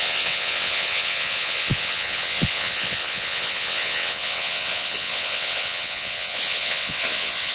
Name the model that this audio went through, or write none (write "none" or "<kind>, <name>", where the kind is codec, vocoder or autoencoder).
vocoder, WaveNeXt